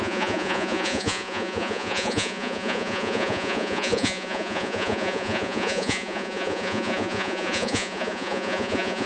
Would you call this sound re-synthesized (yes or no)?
yes